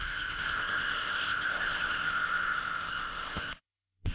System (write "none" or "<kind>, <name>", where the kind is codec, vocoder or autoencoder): codec, ZipCodec